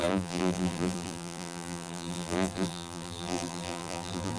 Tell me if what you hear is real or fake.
fake